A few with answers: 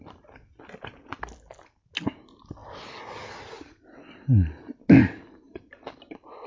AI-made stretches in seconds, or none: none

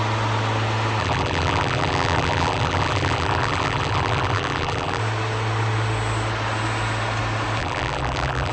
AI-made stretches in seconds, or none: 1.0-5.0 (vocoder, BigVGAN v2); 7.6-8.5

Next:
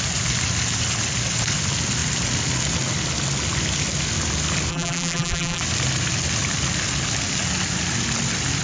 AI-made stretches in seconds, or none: 4.7-5.6 (vocoder, BigVGAN v2)

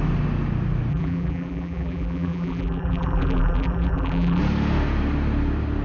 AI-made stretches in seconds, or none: 0.9-4.4 (vocoder, BigVGAN v2)

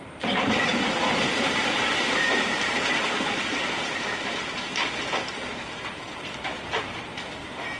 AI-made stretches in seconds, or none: 0.0-4.7 (vocoder, BigVGAN v2); 6.0-7.8

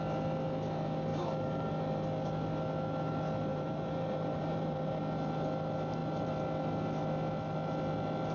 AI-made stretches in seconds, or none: 1.1-1.7 (vocoder, BigVGAN v2); 3.5-4.9

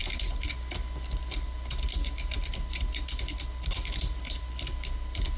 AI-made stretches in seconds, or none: 0.0-0.5 (vocoder, BigVGAN v2); 1.2-4.4